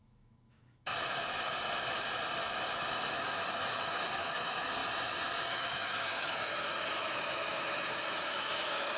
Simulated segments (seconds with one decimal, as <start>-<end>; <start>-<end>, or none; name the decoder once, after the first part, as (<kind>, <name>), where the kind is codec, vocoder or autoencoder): 0.0-0.9 (autoencoder, DAC-VAE); 3.1-4.8; 5.5-9.0